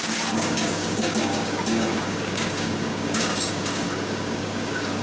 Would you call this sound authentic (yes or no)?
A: no